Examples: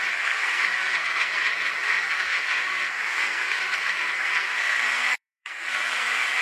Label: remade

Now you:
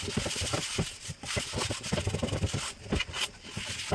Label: recorded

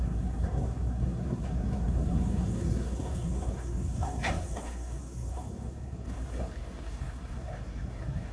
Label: remade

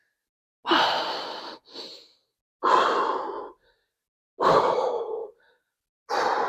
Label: recorded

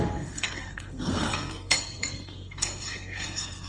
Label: remade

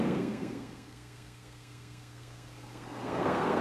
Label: remade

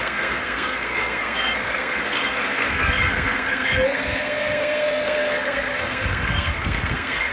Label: remade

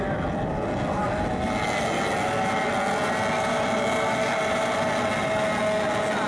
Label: recorded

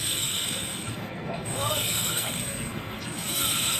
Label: remade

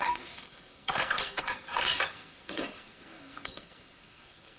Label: remade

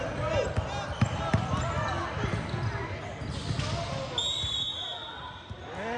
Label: recorded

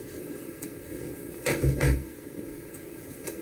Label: remade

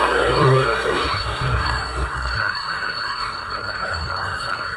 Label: remade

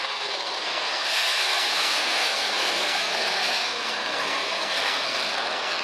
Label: remade